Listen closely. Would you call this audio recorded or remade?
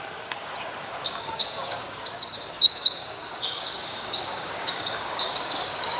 remade